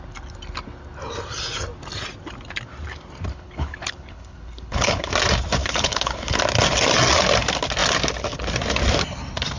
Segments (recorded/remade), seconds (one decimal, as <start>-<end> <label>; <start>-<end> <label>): 0.0-3.3 recorded; 3.3-5.1 remade; 5.1-5.6 recorded; 5.6-6.4 remade; 6.4-9.6 recorded